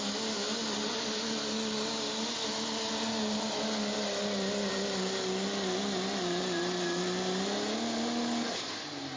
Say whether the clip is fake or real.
real